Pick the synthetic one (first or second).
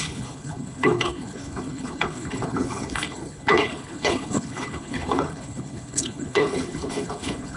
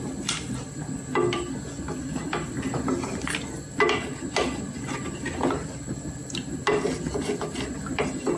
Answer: first